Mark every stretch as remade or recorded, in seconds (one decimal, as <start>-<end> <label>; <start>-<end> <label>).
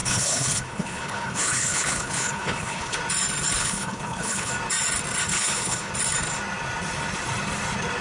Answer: 0.0-3.0 remade; 3.0-3.6 recorded; 3.6-4.5 remade; 4.5-5.3 recorded; 5.3-5.9 remade; 5.9-8.0 recorded